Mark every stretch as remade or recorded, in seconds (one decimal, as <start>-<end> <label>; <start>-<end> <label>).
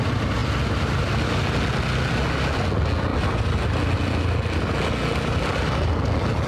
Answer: 0.0-6.5 recorded